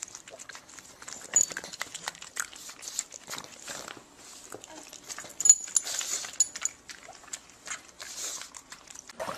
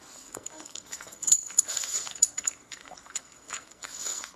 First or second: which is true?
first